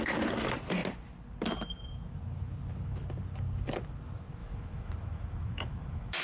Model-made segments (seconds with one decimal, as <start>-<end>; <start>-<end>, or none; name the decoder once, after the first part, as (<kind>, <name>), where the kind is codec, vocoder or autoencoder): 4.4-6.2 (autoencoder, DAC-VAE)